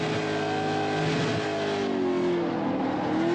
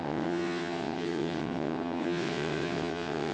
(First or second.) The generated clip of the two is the second